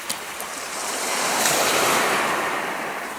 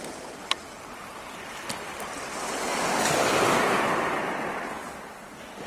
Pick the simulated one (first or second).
first